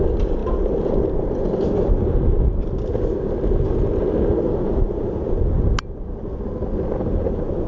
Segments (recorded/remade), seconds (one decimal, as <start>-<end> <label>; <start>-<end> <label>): 0.0-7.7 recorded

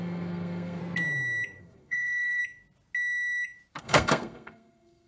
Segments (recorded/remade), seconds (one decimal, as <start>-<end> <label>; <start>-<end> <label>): 0.0-0.8 remade; 0.8-1.6 recorded; 1.6-2.4 remade; 2.4-3.8 recorded; 3.8-5.1 remade